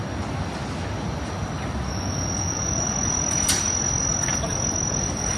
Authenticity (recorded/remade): recorded